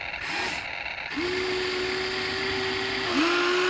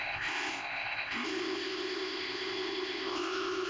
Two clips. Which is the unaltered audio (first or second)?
first